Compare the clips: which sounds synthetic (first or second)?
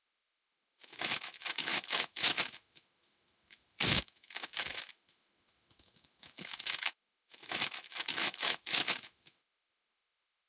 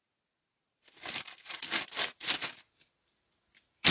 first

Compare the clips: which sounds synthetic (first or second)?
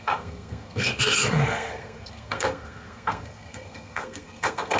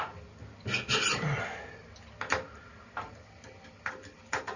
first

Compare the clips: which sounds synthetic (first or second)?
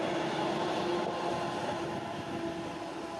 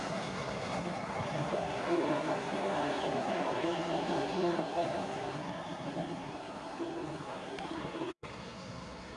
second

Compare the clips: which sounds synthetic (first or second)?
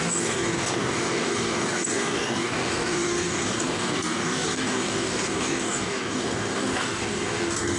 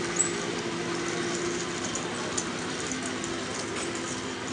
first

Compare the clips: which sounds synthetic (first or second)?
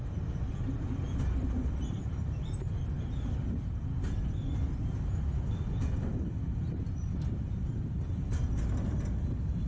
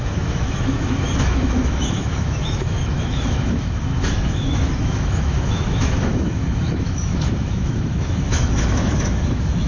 second